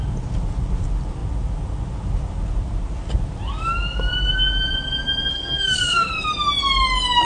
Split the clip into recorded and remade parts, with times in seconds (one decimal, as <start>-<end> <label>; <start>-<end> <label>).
0.0-5.3 recorded; 5.3-6.1 remade; 6.1-7.2 recorded